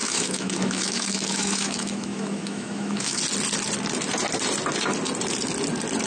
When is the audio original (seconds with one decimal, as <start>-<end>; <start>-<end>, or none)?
3.2-6.1